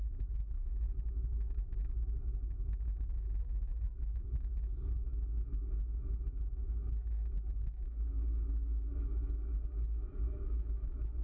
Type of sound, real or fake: fake